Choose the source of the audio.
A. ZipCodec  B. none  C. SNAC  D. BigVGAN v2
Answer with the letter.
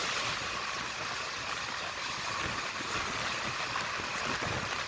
B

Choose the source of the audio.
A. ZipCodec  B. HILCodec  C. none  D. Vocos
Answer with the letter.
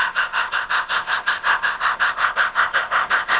A